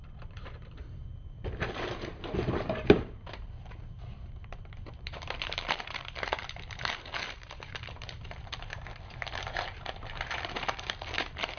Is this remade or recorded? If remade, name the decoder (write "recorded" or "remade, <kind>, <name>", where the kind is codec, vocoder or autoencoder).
remade, vocoder, BigVGAN v2